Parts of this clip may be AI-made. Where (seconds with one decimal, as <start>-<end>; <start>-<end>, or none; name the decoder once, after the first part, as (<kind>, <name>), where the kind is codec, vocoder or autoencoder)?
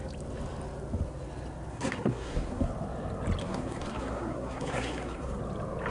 1.7-2.7 (codec, SNAC); 3.4-5.4